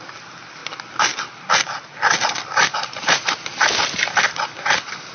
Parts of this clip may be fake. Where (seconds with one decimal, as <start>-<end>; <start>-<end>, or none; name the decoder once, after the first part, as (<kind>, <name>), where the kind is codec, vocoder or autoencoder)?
none